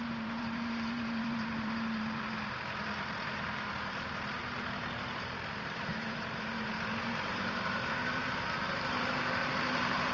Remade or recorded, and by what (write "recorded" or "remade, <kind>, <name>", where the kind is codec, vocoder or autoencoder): remade, vocoder, BigVGAN v2